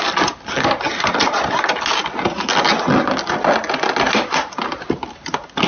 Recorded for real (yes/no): yes